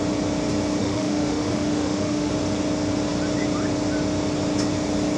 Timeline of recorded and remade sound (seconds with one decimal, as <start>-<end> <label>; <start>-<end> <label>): 0.0-0.8 recorded; 0.8-2.3 remade; 2.3-5.2 recorded